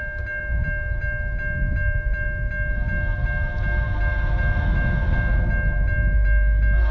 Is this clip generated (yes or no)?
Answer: no